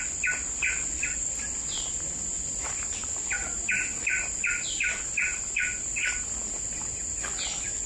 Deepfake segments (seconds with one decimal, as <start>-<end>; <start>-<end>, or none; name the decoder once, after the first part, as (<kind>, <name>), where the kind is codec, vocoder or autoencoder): none